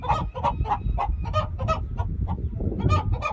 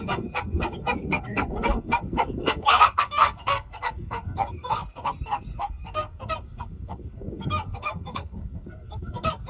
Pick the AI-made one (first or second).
second